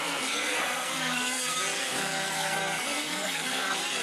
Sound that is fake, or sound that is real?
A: fake